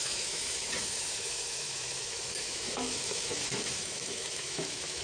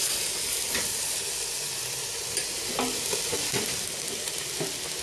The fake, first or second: first